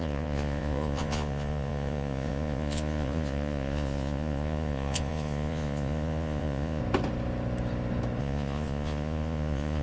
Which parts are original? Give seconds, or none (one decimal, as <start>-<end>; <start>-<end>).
6.8-8.2